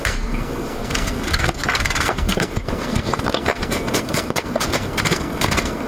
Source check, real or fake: fake